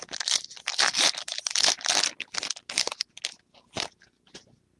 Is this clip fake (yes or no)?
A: no